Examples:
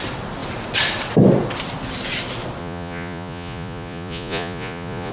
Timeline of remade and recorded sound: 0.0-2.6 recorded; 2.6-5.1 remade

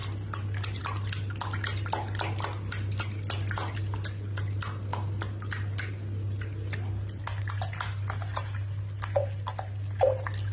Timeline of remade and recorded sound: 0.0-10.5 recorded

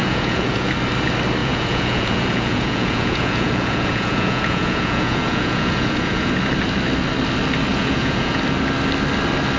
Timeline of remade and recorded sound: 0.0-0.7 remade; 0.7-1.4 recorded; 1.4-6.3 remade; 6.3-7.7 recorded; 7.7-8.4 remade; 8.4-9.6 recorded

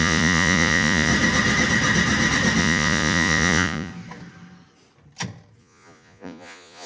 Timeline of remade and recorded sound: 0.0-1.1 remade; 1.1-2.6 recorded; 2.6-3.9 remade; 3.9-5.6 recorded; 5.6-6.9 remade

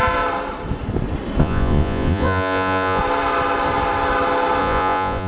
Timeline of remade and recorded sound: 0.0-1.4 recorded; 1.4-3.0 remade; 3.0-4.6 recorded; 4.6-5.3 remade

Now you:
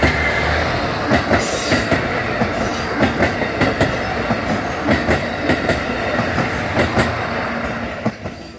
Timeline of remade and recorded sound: 0.0-8.6 recorded

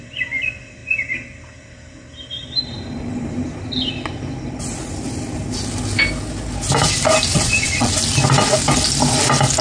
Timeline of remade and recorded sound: 0.0-7.3 recorded; 7.3-7.9 remade; 7.9-9.6 recorded

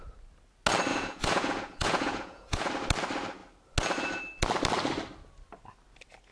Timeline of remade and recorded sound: 0.0-0.9 recorded; 0.9-2.7 remade; 2.7-6.3 recorded